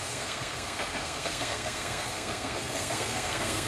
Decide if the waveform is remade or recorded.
remade